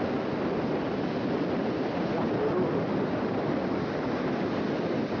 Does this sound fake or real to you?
real